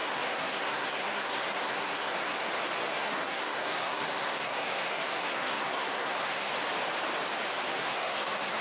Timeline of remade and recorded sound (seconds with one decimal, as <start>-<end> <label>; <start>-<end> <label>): 0.0-2.5 remade; 2.5-2.9 recorded; 2.9-6.5 remade; 6.5-7.7 recorded; 7.7-8.6 remade